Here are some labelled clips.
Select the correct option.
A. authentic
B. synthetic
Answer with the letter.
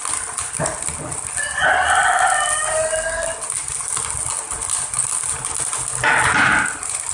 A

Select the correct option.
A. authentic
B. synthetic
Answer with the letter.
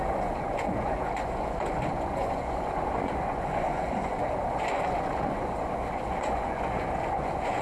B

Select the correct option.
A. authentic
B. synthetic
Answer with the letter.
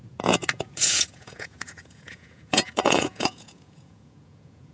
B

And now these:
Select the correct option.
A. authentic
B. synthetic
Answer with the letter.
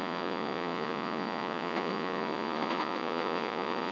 B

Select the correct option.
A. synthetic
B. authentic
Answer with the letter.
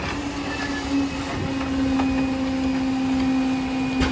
B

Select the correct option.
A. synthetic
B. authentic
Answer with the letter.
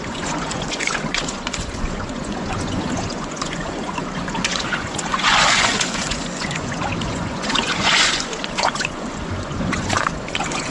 A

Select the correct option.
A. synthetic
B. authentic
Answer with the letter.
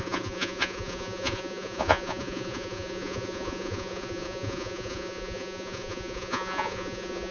A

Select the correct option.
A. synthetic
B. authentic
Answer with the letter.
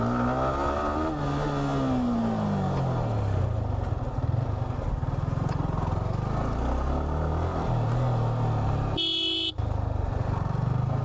B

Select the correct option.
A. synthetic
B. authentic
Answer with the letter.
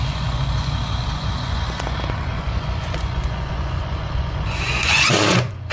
A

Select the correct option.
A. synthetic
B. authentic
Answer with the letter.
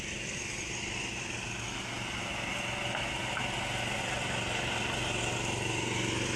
B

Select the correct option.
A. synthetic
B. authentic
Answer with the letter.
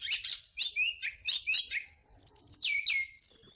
B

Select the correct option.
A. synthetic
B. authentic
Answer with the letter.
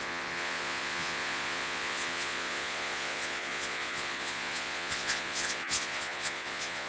A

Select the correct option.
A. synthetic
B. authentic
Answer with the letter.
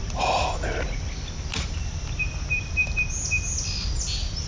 B